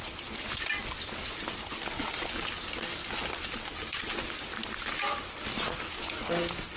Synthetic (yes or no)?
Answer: no